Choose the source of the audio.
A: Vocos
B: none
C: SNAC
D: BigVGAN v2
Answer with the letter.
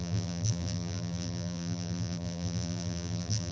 D